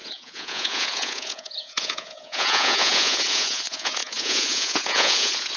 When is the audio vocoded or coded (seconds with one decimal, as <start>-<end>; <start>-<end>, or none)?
0.0-5.6